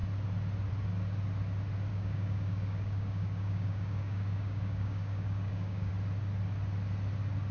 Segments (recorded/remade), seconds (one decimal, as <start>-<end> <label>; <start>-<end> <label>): 0.0-1.9 recorded; 1.9-5.9 remade; 5.9-7.5 recorded